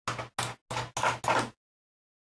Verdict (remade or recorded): recorded